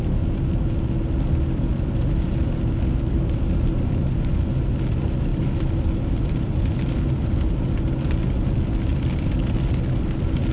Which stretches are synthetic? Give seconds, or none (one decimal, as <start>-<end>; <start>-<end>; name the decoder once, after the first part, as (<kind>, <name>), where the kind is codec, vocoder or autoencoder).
5.3-6.6 (vocoder, BigVGAN v2); 8.9-9.4